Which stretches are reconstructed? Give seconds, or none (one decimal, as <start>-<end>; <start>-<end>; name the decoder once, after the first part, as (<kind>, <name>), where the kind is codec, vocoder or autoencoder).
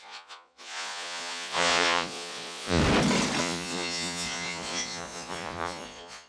0.0-2.8 (vocoder, Vocos); 3.4-6.3